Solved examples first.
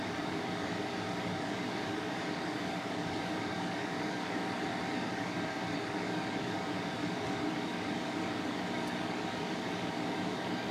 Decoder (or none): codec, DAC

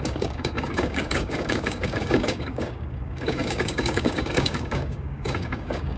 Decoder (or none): codec, DAC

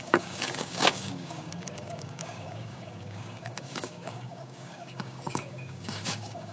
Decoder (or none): codec, DAC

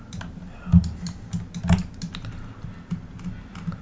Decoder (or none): none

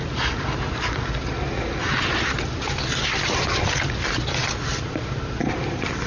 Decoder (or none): none